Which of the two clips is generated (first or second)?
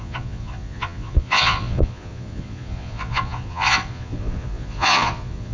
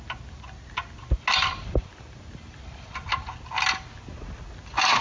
first